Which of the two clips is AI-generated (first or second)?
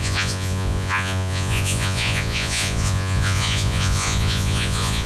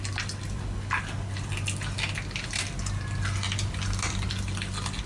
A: first